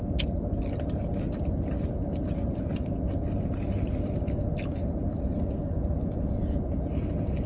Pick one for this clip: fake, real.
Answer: real